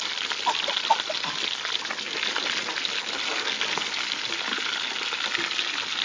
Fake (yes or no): no